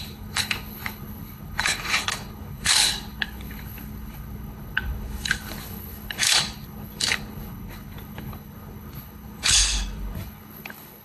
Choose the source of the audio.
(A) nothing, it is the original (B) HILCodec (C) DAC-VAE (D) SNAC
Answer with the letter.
B